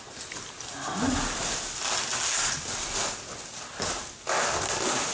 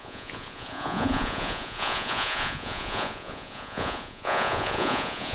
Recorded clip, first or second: first